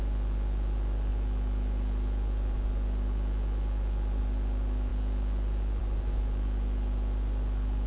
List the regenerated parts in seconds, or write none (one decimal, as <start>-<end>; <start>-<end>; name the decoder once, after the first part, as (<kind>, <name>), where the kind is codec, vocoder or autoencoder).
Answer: none